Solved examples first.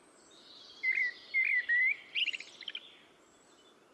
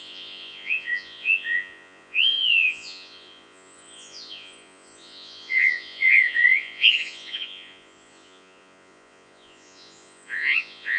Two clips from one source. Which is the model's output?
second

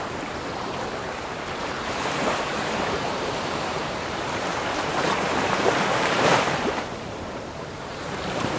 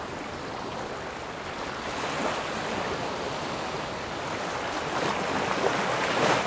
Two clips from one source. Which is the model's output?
first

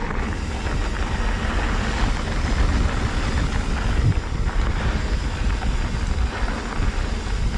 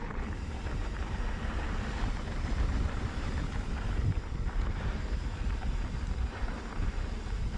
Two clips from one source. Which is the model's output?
second